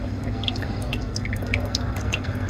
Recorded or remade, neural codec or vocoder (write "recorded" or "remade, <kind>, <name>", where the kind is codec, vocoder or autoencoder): remade, codec, SNAC